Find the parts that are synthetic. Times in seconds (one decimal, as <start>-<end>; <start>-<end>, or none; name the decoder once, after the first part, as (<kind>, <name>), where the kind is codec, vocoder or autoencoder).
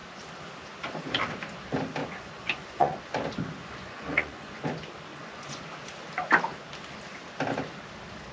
2.0-3.0 (vocoder, Vocos); 3.6-4.6; 5.1-5.6